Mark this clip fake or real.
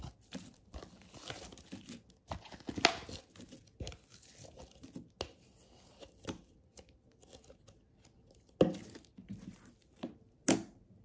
real